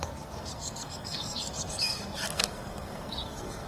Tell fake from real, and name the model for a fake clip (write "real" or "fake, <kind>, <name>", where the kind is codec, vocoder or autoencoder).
fake, codec, SNAC